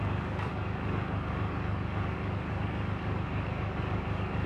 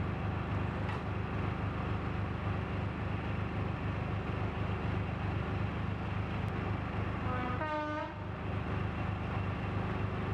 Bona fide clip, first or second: second